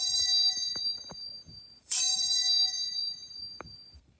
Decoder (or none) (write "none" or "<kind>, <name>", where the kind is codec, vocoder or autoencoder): vocoder, BigVGAN v2